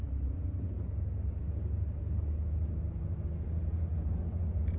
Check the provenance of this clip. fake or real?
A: real